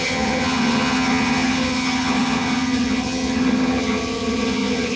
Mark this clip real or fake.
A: fake